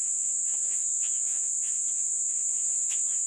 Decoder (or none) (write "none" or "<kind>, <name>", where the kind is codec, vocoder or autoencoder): vocoder, Vocos